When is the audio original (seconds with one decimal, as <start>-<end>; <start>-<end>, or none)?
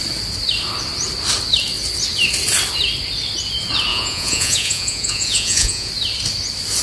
0.0-3.9; 5.9-6.8